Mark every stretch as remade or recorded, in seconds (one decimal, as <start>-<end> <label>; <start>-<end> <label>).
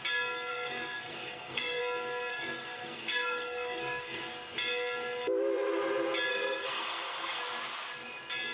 0.0-0.5 recorded; 0.5-1.8 remade; 1.8-2.3 recorded; 2.3-4.2 remade; 4.2-6.3 recorded; 6.3-7.4 remade; 7.4-8.5 recorded